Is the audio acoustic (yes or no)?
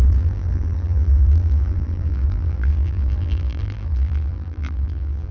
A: no